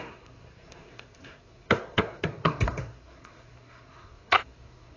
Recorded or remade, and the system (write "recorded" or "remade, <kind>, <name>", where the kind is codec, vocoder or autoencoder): remade, codec, SNAC